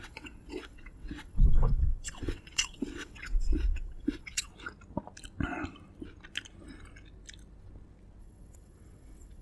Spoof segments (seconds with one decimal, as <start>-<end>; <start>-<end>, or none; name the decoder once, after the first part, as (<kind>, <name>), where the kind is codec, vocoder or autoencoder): 0.0-4.5 (vocoder, WaveNeXt); 8.2-9.4